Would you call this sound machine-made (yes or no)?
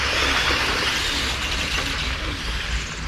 yes